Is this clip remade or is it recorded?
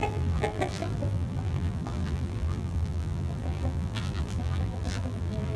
remade